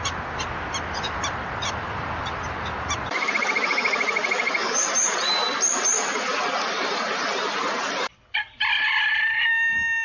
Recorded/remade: recorded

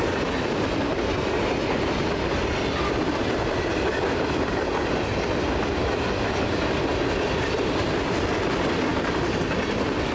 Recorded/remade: recorded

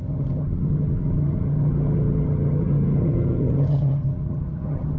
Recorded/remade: remade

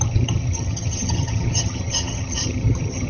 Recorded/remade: remade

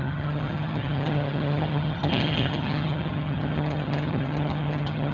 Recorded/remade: remade